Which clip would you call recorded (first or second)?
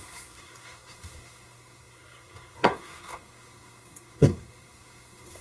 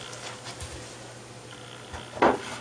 second